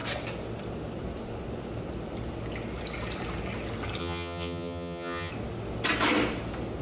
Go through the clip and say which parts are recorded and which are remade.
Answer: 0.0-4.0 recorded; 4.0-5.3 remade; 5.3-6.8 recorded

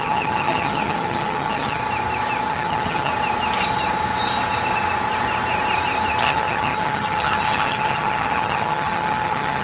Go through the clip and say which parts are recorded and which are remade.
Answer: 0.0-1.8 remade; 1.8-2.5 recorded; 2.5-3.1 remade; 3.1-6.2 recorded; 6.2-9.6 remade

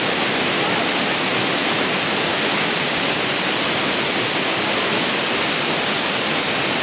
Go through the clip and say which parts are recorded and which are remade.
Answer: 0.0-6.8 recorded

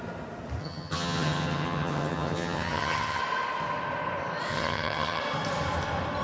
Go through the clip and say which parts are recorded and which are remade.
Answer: 0.0-0.6 recorded; 0.6-3.2 remade; 3.2-4.5 recorded; 4.5-5.2 remade; 5.2-6.2 recorded